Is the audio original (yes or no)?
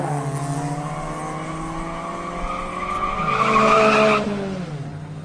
yes